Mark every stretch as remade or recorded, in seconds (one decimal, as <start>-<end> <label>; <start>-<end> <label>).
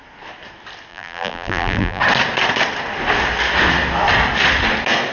0.0-0.9 recorded; 0.9-2.0 remade; 2.0-5.1 recorded